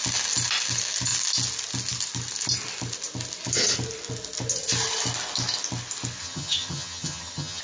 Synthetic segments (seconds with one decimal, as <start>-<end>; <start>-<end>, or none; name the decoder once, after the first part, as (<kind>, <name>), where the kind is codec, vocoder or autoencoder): 6.2-7.6 (vocoder, HiFi-GAN)